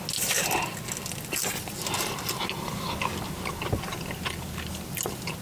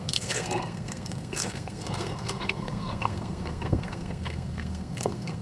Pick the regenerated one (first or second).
second